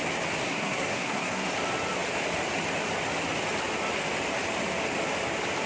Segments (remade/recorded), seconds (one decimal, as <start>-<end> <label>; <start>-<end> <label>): 0.0-0.4 recorded; 0.4-1.5 remade; 1.5-5.7 recorded